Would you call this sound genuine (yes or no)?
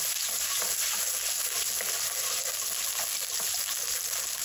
yes